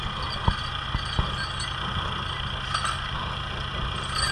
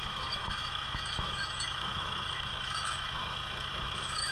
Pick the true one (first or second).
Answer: first